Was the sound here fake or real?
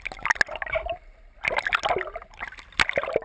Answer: real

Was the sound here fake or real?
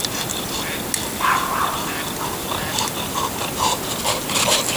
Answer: real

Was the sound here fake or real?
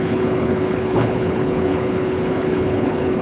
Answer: fake